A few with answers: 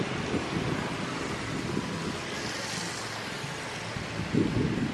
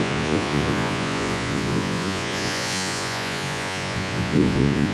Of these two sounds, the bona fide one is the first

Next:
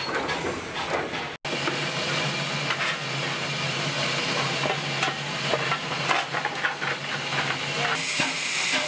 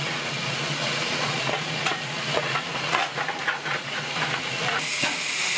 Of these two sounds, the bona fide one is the first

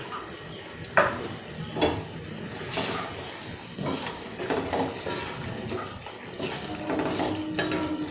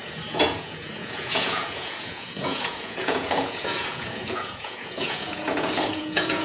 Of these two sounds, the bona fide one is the first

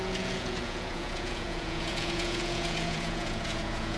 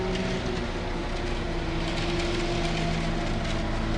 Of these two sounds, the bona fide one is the second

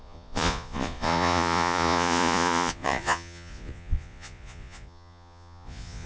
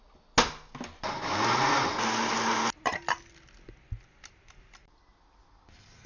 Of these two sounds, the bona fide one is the second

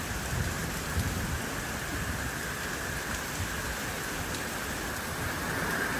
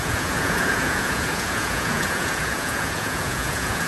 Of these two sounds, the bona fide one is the first